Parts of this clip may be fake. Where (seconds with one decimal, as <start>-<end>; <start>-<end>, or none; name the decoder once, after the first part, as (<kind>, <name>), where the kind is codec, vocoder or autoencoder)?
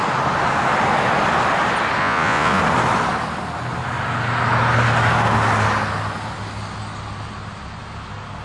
2.0-2.6 (vocoder, Vocos)